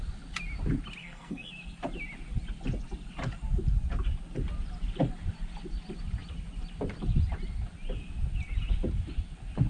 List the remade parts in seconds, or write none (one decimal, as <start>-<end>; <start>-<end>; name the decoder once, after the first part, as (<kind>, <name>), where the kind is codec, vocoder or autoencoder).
1.0-1.5 (codec, SNAC)